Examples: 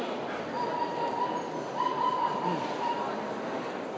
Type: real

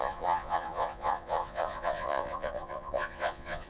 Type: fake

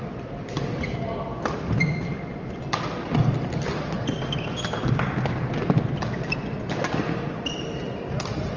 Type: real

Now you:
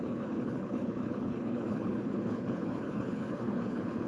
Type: fake